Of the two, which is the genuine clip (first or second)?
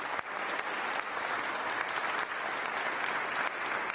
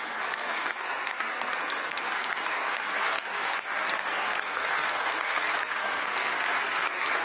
first